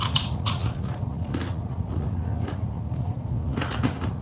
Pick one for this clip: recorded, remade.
remade